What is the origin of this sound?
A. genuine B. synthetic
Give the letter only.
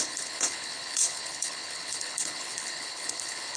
B